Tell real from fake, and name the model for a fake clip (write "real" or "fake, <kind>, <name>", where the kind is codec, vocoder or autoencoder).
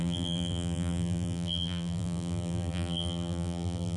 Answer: fake, vocoder, BigVGAN v2